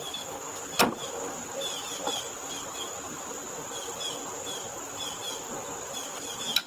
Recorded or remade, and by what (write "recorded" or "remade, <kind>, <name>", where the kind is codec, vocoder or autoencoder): recorded